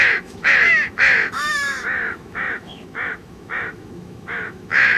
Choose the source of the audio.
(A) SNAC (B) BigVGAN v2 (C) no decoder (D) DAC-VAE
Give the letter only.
D